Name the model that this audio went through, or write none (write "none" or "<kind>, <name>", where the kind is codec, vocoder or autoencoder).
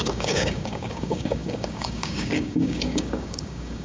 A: codec, DAC